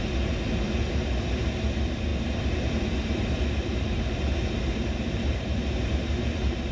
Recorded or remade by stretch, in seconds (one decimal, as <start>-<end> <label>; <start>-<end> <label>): 0.0-3.7 recorded; 3.7-6.0 remade; 6.0-6.7 recorded